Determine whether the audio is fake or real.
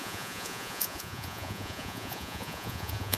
fake